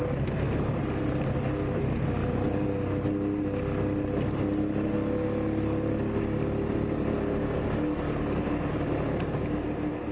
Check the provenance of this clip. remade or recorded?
recorded